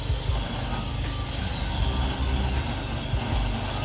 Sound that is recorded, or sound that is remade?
recorded